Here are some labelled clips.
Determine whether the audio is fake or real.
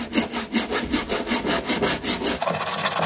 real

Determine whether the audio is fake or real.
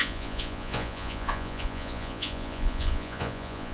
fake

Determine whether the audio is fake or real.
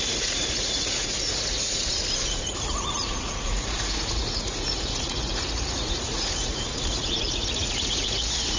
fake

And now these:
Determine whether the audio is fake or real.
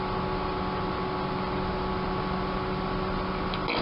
real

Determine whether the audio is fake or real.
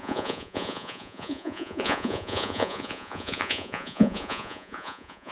fake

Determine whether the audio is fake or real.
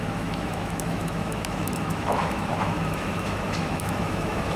fake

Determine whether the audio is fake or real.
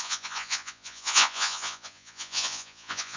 fake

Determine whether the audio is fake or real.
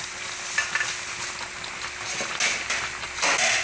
real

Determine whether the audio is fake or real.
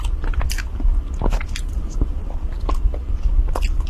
real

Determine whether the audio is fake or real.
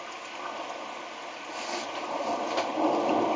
real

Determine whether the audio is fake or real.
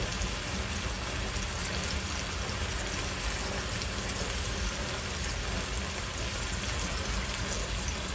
real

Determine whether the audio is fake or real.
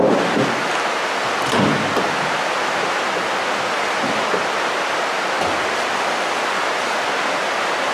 real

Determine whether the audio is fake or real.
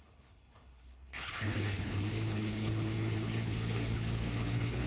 fake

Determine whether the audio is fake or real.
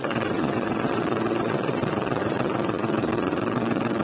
fake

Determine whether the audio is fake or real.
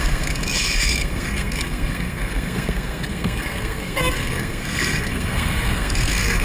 fake